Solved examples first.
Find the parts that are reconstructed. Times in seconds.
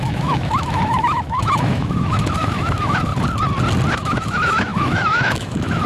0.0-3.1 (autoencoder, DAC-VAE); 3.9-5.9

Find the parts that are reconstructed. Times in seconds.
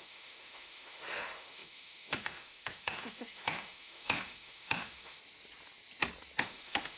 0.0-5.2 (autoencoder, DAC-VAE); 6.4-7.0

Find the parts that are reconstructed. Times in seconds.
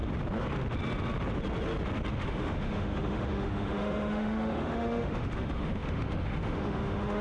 2.1-7.2 (autoencoder, DAC-VAE)